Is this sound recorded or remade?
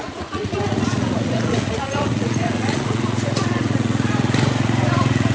remade